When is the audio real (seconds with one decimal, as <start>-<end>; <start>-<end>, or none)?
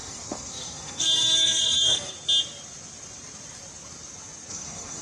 2.1-4.5